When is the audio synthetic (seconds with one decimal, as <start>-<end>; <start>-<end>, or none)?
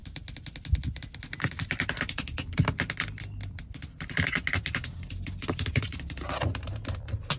none